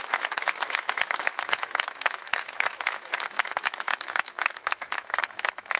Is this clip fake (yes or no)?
yes